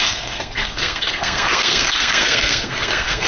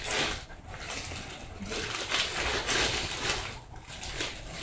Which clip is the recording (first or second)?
second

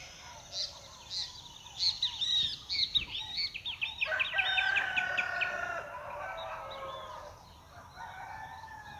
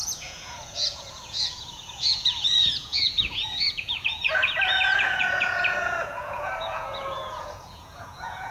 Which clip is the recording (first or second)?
first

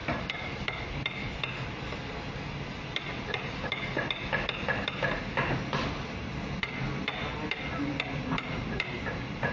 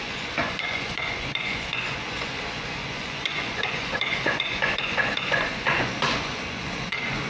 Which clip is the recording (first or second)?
first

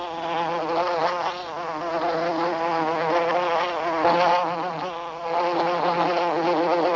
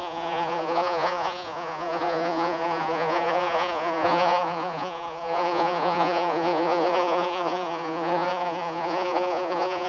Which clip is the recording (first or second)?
first